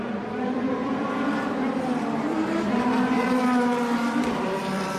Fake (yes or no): yes